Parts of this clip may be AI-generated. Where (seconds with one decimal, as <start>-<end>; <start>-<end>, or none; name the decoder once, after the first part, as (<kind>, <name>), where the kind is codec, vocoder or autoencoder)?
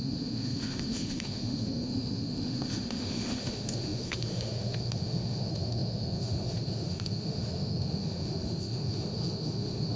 0.0-10.0 (autoencoder, DAC-VAE)